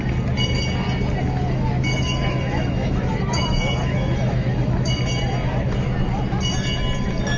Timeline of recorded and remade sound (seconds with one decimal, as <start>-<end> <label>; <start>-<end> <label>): 0.0-1.2 recorded; 1.2-4.9 remade; 4.9-7.4 recorded